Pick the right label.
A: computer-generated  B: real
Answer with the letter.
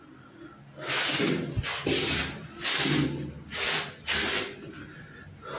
B